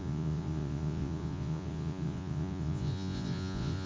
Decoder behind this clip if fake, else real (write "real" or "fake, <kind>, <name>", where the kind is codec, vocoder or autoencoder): fake, vocoder, Vocos